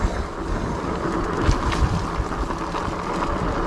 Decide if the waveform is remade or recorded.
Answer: recorded